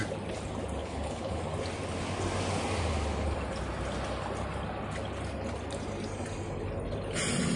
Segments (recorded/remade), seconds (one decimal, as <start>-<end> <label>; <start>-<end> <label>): 0.0-0.8 recorded; 0.8-1.4 remade; 1.4-7.6 recorded